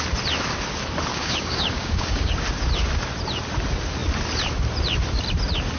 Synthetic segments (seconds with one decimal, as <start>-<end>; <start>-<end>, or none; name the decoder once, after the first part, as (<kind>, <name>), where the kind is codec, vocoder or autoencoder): 1.1-2.3 (codec, DAC)